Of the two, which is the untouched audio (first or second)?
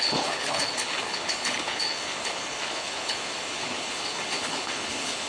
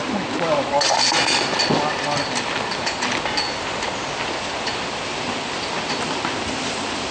second